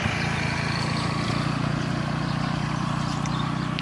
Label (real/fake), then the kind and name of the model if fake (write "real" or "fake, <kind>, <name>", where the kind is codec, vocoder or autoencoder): real